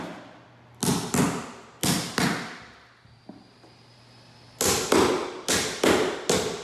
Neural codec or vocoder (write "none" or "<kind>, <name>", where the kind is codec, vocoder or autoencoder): none